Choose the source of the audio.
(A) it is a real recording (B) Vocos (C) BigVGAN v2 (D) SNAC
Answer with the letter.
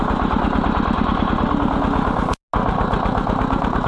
A